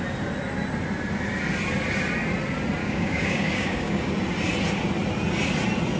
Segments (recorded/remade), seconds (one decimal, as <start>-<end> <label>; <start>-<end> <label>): 0.0-2.8 recorded; 2.8-4.1 remade; 4.1-6.0 recorded